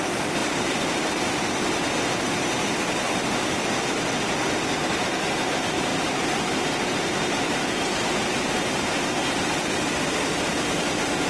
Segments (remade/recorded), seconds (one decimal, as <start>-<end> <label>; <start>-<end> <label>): 0.0-0.4 recorded; 0.4-1.9 remade; 1.9-5.9 recorded; 5.9-10.7 remade; 10.7-11.3 recorded